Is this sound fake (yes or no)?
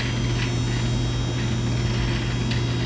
no